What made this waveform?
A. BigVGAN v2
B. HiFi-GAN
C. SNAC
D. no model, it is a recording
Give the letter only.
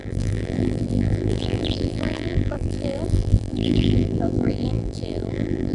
A